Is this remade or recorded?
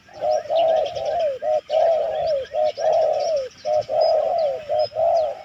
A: recorded